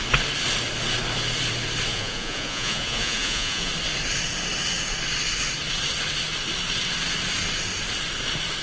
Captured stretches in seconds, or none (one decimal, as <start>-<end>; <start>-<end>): 0.0-1.9; 3.7-8.6